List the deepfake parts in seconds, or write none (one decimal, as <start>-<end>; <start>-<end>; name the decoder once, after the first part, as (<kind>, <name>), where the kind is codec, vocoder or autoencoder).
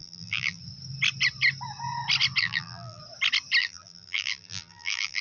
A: 0.0-0.6 (vocoder, BigVGAN v2); 2.4-3.0; 3.6-5.2